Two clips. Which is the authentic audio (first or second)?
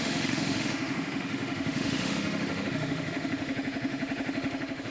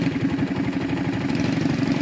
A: second